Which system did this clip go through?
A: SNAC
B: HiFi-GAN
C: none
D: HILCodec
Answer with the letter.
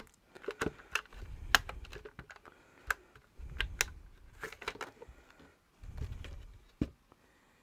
C